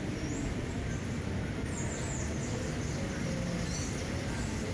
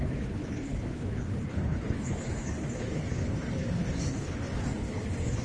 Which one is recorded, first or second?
first